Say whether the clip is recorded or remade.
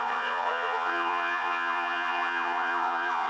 remade